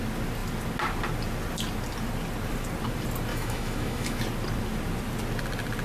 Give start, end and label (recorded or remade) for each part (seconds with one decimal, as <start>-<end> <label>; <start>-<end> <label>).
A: 0.0-3.3 recorded; 3.3-4.2 remade; 4.2-5.8 recorded